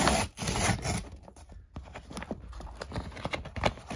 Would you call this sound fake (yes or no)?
no